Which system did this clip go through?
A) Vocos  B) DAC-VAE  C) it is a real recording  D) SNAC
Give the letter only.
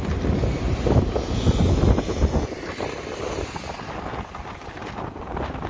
C